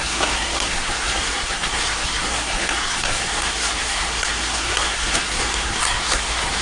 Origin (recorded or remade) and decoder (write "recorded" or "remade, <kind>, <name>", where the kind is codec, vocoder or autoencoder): remade, codec, SNAC